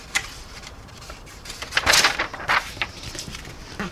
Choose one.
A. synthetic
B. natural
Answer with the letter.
A